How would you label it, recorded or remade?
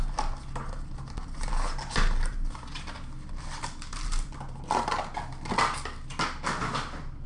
recorded